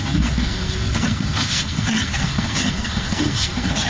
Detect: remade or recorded remade